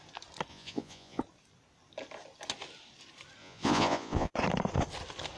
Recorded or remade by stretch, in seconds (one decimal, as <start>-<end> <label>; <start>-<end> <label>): 0.0-0.5 recorded; 0.5-1.2 remade; 1.2-3.4 recorded; 3.4-4.3 remade; 4.3-5.4 recorded